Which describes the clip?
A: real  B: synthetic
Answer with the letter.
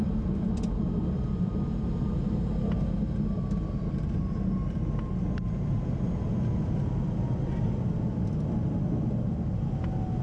A